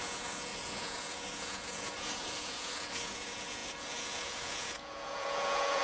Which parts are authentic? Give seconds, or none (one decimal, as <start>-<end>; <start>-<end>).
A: none

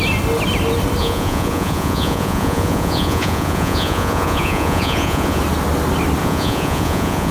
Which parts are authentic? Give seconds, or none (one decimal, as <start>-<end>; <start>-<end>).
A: 0.0-1.0; 5.4-6.2

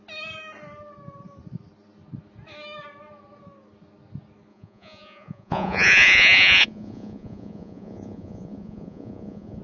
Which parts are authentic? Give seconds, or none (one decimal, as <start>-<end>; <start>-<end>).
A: 0.0-4.5

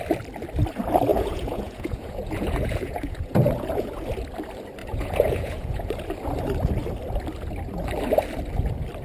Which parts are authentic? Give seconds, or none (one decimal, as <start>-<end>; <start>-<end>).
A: 0.0-1.1; 3.9-4.8; 5.9-9.0

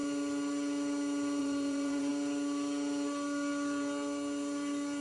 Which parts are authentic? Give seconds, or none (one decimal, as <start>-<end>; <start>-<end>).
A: 0.0-1.4; 2.1-5.0

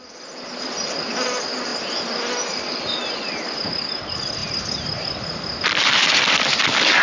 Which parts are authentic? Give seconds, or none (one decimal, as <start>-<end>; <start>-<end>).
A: 0.0-7.0